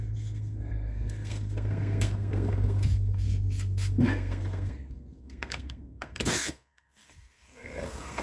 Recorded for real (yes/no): no